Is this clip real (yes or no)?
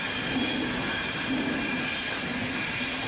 yes